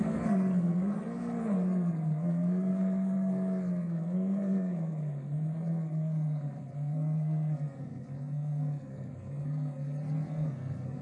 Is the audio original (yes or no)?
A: no